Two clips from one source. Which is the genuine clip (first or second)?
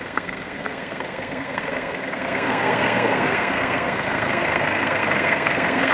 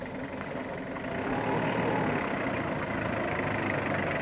second